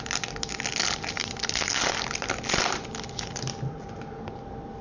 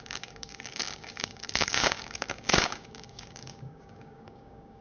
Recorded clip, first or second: first